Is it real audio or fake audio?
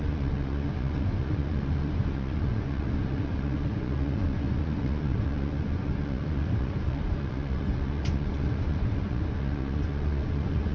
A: fake